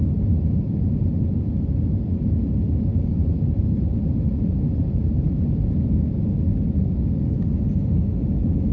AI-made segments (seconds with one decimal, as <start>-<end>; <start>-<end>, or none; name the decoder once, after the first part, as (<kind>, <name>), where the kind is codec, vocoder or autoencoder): 2.9-5.5 (vocoder, BigVGAN v2)